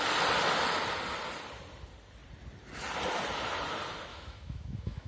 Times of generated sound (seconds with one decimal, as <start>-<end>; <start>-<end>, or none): 4.1-5.1